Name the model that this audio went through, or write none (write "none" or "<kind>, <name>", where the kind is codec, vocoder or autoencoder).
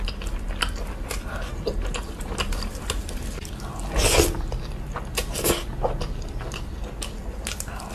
none